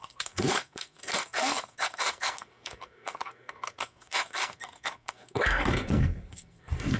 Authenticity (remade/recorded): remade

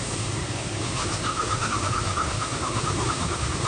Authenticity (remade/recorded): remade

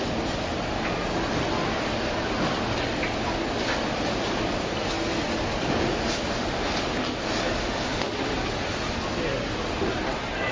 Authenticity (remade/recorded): recorded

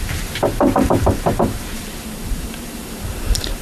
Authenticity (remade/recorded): remade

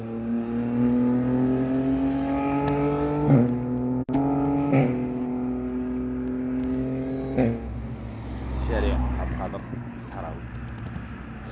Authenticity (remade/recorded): recorded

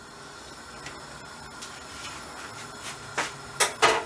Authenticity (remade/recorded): recorded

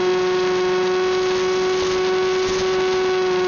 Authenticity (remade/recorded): recorded